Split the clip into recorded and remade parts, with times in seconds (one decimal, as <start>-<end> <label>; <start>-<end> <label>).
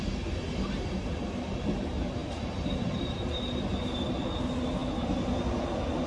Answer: 0.0-6.1 recorded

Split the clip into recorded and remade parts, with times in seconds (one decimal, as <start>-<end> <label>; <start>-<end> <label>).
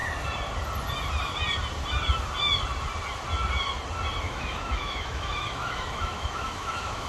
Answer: 0.0-4.2 recorded; 4.2-7.1 remade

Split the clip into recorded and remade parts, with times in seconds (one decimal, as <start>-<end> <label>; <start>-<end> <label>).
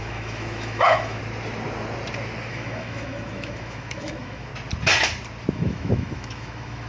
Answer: 0.0-1.2 remade; 1.2-2.5 recorded; 2.5-4.5 remade; 4.5-5.5 recorded; 5.5-6.9 remade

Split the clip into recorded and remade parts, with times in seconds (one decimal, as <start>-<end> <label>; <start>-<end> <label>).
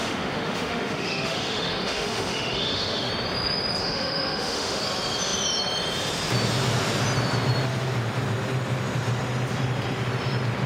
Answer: 0.0-3.1 remade; 3.1-3.8 recorded; 3.8-4.8 remade; 4.8-10.7 recorded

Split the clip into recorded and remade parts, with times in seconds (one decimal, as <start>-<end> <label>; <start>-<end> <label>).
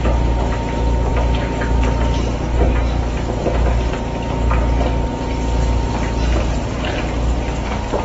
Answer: 0.0-8.0 recorded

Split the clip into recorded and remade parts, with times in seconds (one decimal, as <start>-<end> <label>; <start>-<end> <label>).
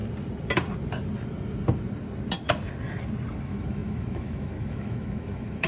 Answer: 0.0-3.4 recorded; 3.4-5.7 remade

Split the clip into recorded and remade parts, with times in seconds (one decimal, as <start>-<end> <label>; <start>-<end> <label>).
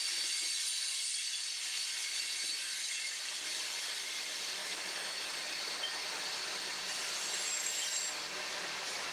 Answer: 0.0-4.6 recorded; 4.6-5.4 remade; 5.4-9.1 recorded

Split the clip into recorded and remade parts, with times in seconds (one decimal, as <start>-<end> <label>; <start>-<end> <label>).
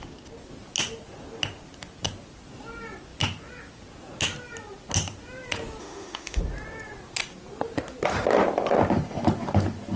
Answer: 0.0-5.8 recorded; 5.8-6.4 remade; 6.4-10.0 recorded